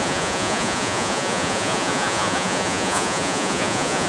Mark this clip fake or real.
fake